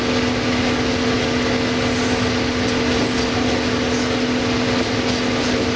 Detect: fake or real real